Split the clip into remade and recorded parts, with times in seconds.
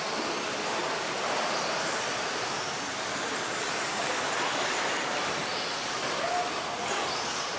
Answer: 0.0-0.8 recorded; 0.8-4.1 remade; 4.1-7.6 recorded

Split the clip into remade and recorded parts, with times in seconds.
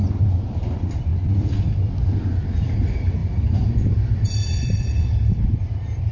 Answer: 0.0-3.2 recorded; 3.2-5.0 remade; 5.0-6.1 recorded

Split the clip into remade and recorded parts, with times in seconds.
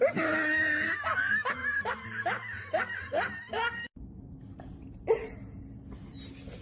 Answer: 0.0-1.6 recorded; 1.6-5.6 remade; 5.6-6.6 recorded